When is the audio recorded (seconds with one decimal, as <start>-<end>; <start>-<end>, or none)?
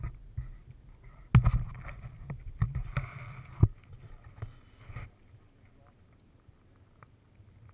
0.0-7.7